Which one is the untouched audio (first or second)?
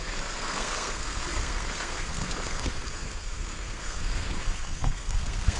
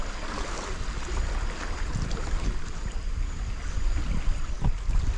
second